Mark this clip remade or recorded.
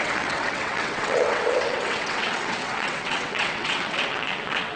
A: remade